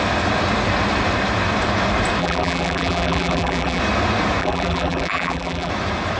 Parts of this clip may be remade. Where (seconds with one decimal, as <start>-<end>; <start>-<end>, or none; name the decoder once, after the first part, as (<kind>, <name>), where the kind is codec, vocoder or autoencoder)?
2.2-3.8 (vocoder, BigVGAN v2); 4.4-5.7

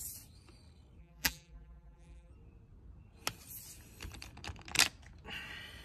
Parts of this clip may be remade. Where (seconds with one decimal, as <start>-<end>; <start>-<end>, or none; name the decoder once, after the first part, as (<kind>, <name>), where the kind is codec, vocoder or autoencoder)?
1.0-2.3 (vocoder, BigVGAN v2)